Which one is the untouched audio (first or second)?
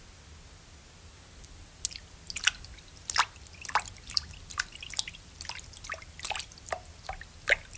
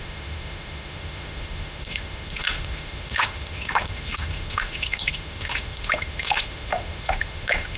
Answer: first